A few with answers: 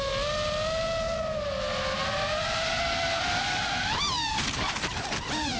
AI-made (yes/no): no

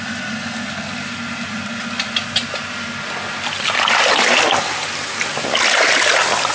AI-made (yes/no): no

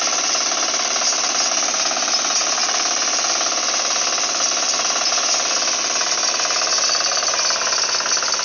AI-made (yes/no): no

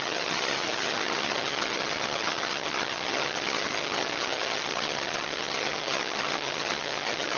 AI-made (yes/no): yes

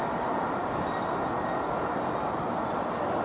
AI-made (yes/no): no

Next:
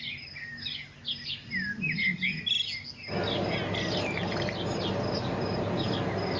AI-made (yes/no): no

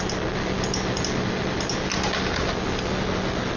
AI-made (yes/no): no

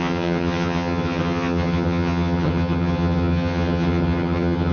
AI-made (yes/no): yes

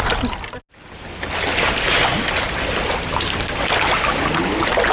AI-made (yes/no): no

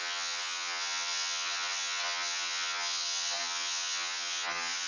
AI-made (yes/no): yes